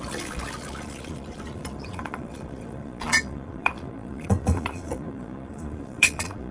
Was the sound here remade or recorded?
remade